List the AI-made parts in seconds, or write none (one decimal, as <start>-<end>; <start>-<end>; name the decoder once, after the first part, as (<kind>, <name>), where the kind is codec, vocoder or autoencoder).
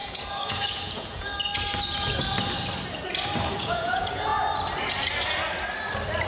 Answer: 0.0-1.3 (vocoder, Vocos); 3.6-4.3